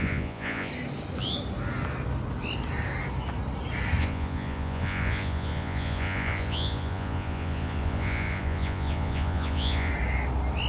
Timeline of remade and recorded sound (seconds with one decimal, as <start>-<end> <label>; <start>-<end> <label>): 0.0-0.7 remade; 0.7-4.0 recorded; 4.0-9.9 remade; 9.9-10.7 recorded